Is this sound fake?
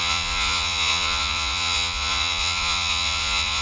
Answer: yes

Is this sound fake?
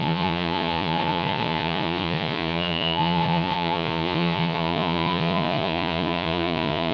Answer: yes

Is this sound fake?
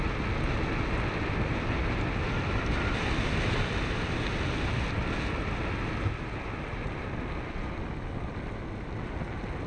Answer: no